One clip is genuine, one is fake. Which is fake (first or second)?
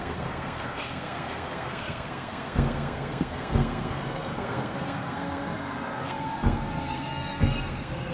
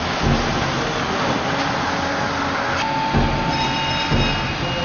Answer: first